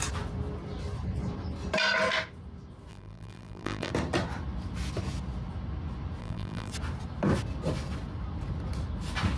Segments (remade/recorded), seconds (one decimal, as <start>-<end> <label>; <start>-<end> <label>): 0.0-2.9 recorded; 2.9-3.9 remade; 3.9-6.2 recorded; 6.2-6.7 remade; 6.7-9.4 recorded